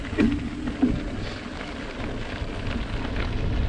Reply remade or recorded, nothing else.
recorded